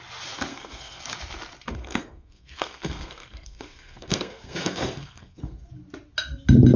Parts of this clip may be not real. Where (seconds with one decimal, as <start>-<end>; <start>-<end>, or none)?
0.5-1.0; 1.7-5.7